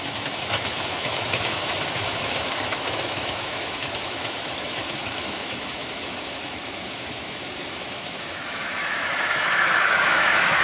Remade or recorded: remade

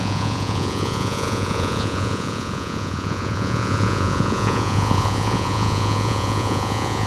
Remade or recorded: remade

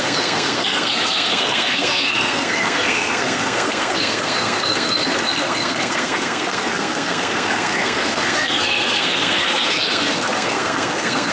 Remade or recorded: remade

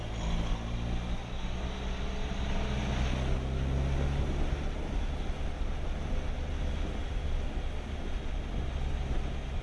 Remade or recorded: recorded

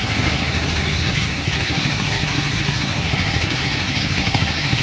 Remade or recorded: remade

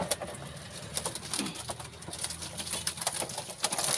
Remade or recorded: recorded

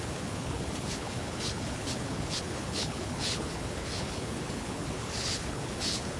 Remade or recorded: remade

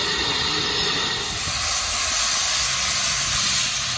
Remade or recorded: recorded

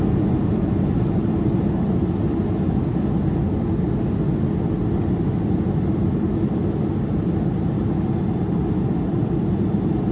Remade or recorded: recorded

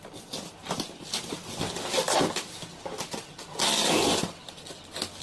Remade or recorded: recorded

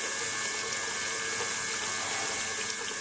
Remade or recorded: recorded